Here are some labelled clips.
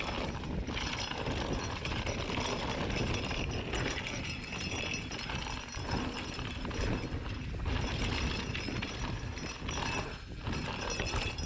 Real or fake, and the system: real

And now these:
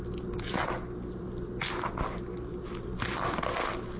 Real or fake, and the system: real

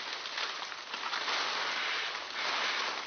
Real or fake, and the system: real